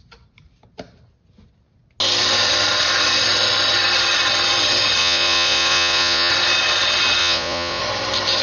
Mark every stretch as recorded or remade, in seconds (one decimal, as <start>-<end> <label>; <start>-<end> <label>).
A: 0.0-5.0 recorded; 5.0-6.3 remade; 6.3-7.2 recorded; 7.2-7.8 remade; 7.8-8.4 recorded